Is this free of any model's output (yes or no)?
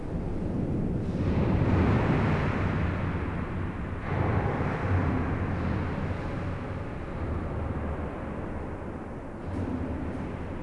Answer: yes